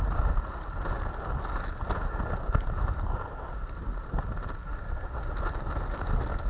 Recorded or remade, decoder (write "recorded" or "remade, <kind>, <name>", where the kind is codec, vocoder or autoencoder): recorded